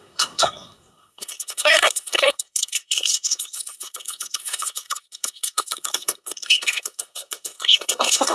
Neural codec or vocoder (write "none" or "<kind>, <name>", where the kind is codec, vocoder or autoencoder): codec, SNAC